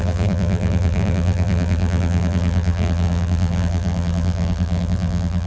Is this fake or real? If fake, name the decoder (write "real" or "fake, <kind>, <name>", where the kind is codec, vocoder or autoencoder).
fake, vocoder, BigVGAN v2